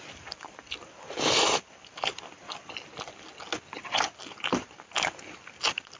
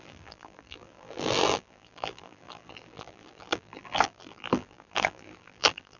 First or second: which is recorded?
first